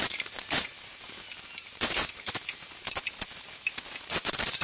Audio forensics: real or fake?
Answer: fake